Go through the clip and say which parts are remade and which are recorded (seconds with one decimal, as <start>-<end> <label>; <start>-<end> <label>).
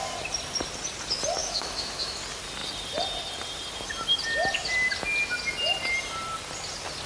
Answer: 0.0-1.4 recorded; 1.4-2.2 remade; 2.2-7.1 recorded